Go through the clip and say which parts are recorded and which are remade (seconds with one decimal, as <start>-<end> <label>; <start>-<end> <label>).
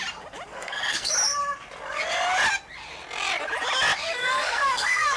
0.0-0.5 recorded; 0.5-1.1 remade; 1.1-4.2 recorded; 4.2-5.2 remade